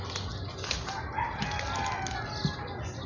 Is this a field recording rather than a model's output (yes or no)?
yes